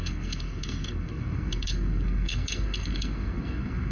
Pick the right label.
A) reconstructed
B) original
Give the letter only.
A